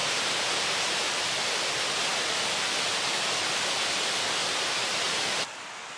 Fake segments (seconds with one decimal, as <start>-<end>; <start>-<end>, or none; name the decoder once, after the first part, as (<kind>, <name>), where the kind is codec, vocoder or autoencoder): 0.0-1.4 (vocoder, BigVGAN v2); 4.4-5.5